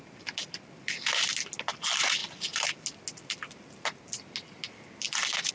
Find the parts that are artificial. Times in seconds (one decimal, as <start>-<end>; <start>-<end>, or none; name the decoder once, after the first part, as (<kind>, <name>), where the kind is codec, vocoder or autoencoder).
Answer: none